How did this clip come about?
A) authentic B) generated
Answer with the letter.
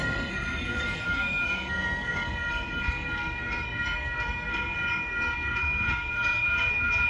B